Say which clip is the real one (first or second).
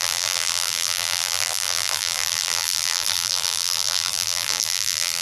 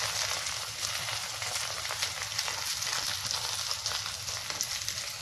second